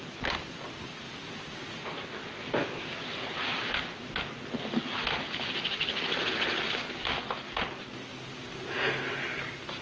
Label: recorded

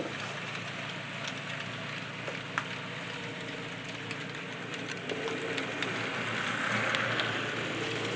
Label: recorded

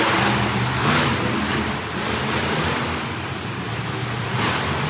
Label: recorded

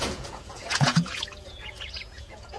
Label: remade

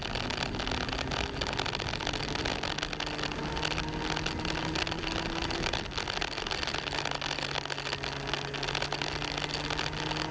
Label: recorded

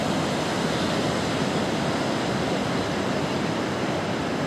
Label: recorded